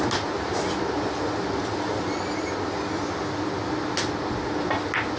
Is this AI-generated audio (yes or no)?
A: no